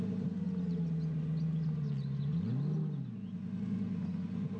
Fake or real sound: real